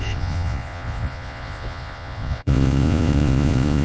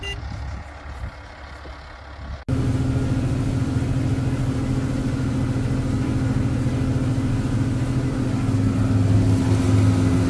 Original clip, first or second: second